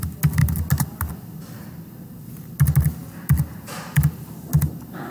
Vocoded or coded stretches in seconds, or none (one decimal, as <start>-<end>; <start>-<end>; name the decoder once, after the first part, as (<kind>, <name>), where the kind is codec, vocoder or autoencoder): none